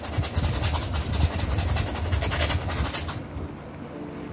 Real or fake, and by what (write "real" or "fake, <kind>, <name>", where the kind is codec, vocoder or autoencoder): real